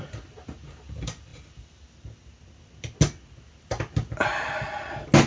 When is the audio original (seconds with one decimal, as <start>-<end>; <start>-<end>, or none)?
0.0-5.3